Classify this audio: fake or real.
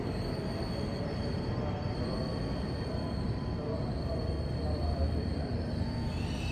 real